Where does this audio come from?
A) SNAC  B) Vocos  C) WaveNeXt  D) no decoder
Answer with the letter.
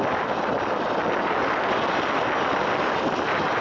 D